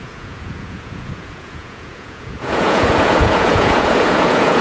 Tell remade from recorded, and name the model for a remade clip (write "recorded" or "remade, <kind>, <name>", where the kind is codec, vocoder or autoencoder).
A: remade, vocoder, Vocos